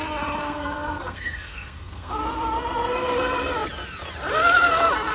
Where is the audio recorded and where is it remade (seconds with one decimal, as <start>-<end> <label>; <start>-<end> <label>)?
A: 0.0-0.4 recorded; 0.4-2.1 remade; 2.1-5.1 recorded